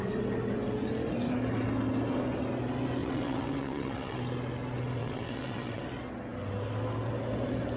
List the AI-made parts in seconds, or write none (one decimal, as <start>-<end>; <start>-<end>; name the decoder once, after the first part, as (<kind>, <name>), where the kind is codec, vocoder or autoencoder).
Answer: 3.0-4.2 (vocoder, WaveNeXt); 5.0-5.8